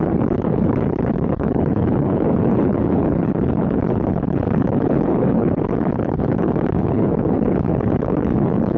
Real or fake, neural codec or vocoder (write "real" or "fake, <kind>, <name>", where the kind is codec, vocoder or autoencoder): fake, codec, HILCodec